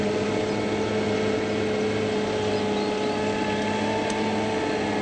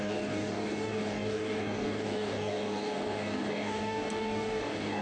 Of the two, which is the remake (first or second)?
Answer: second